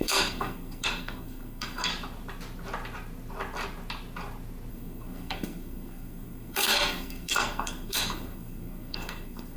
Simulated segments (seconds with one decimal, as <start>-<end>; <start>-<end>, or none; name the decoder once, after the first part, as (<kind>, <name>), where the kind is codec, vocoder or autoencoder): 0.0-1.9 (codec, SNAC); 4.7-9.6